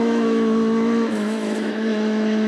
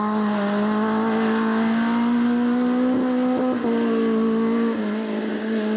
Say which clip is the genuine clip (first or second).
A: second